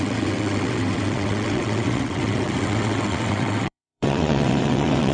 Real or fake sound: fake